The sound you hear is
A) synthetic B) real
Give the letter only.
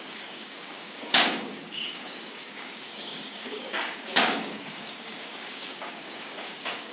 A